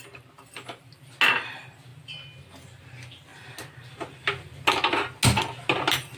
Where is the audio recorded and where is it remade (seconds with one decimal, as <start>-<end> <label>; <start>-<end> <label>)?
0.0-6.2 recorded